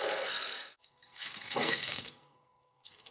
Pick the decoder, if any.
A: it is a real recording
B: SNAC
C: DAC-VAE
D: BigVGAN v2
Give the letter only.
B